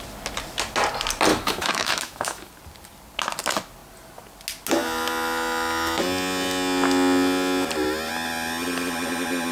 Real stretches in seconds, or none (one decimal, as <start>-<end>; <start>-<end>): 0.0-1.3; 2.5-9.5